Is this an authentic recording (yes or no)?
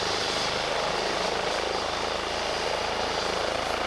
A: yes